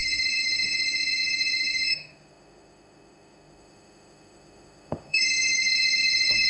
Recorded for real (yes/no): no